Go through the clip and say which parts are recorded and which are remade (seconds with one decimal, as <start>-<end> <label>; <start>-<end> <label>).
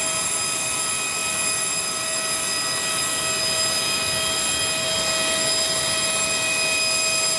0.0-7.4 recorded